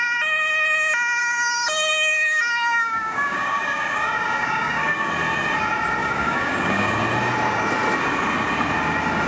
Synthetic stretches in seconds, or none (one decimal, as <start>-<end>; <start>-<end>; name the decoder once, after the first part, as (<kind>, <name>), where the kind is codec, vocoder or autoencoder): 1.2-5.1 (codec, DAC); 6.0-7.0